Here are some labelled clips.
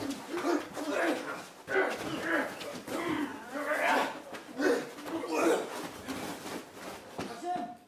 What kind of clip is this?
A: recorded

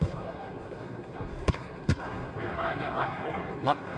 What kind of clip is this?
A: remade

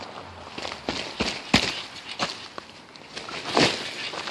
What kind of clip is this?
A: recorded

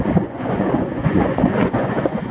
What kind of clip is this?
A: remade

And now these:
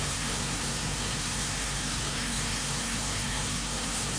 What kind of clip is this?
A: remade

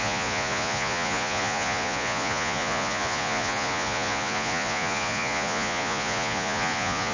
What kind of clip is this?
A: remade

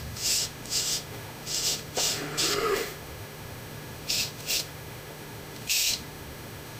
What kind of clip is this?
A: remade